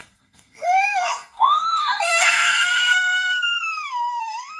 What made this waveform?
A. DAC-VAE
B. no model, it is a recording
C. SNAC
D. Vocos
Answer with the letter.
C